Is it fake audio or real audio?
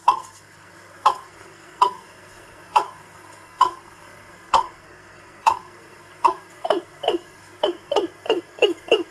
fake